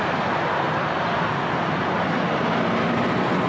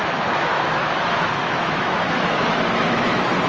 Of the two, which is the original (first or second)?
first